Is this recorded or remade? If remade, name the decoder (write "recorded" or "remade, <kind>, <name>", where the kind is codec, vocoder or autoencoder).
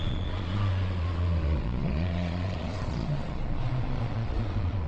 remade, vocoder, Vocos